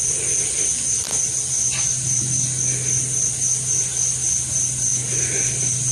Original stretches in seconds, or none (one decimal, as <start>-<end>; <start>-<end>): 0.0-5.9